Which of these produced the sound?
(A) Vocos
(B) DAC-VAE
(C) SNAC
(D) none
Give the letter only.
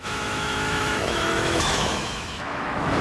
B